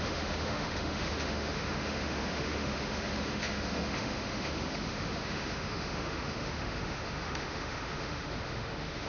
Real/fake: fake